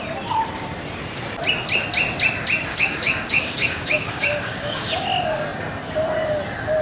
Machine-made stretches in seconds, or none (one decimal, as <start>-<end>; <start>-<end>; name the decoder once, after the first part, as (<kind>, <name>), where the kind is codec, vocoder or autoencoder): 2.7-4.9 (codec, DAC)